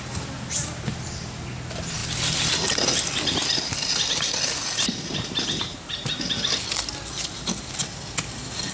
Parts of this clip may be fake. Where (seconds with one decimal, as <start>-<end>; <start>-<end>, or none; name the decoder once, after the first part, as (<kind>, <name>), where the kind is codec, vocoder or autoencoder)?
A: none